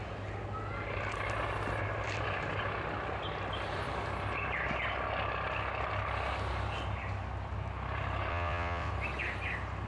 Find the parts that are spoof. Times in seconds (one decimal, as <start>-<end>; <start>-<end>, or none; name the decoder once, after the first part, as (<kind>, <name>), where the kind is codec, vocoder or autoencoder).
8.3-8.9 (vocoder, WaveNeXt)

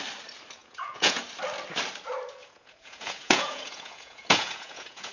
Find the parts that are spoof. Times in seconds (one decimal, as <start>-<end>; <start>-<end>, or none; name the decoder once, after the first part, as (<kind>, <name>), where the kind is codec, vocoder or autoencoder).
0.6-1.2 (vocoder, Vocos); 2.4-5.1